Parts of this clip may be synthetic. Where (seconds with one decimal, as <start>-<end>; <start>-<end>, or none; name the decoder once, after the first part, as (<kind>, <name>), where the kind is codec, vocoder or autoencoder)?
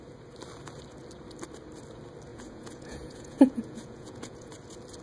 2.3-4.5 (vocoder, Vocos)